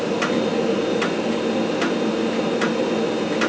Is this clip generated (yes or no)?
no